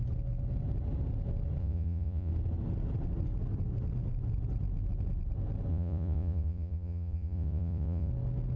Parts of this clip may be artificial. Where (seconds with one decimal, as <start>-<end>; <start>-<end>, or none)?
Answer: 1.6-2.3; 5.7-8.1